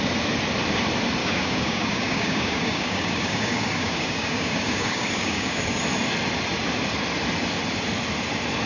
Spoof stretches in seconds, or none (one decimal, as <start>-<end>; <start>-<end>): 1.2-5.8